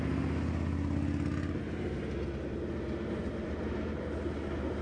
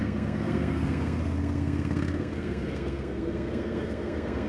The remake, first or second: second